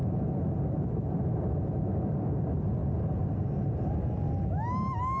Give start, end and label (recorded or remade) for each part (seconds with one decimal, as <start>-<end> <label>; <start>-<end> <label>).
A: 0.0-5.2 recorded